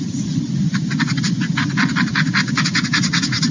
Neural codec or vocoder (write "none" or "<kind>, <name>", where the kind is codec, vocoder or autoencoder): none